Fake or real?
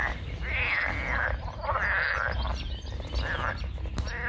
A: real